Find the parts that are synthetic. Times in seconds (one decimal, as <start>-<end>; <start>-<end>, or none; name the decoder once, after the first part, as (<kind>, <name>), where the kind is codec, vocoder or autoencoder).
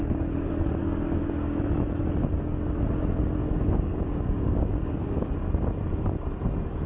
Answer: 0.8-1.6 (codec, DAC); 3.4-5.3